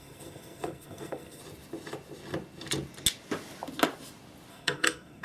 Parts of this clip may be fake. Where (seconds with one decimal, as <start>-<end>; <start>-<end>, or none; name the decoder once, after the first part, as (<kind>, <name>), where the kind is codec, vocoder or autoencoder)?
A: 0.0-1.4 (codec, SNAC); 4.5-5.2